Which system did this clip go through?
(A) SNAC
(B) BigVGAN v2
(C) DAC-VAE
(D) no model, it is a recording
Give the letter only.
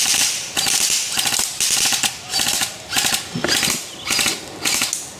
D